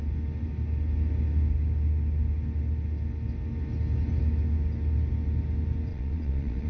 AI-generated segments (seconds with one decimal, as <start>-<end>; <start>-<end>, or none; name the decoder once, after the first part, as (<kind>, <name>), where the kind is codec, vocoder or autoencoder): 5.9-6.7 (vocoder, Vocos)